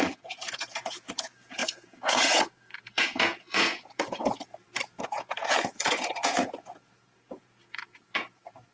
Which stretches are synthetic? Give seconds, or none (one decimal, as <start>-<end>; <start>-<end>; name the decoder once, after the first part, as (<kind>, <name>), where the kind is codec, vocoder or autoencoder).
0.0-4.5 (vocoder, Vocos); 5.0-8.7